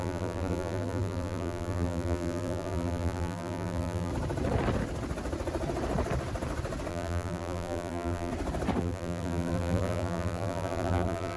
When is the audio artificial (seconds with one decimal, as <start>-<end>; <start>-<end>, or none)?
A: 0.0-4.1; 6.9-8.3; 8.8-11.4